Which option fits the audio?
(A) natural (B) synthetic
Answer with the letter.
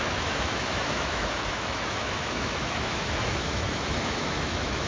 B